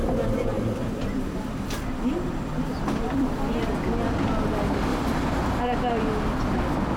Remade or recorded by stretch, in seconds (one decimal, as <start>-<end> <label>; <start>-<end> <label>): 0.0-3.6 remade; 3.6-4.9 recorded; 4.9-5.5 remade; 5.5-7.0 recorded